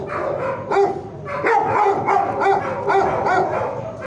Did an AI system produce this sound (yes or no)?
no